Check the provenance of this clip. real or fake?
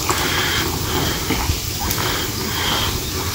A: real